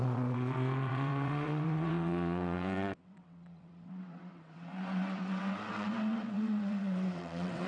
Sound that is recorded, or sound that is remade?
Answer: remade